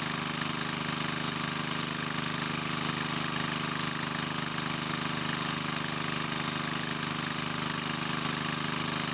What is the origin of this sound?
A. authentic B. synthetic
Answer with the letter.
A